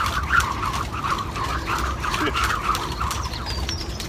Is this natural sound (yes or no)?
yes